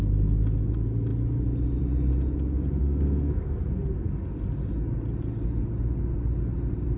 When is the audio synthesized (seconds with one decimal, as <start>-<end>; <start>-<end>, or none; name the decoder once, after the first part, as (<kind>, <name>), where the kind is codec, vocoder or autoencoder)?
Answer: 2.8-3.6 (codec, SNAC)